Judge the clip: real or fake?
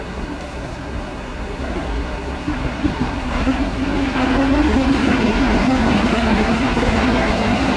fake